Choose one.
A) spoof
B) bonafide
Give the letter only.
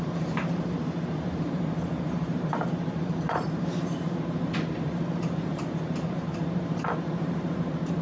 A